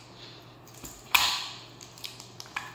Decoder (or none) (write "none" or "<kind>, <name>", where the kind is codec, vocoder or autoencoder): none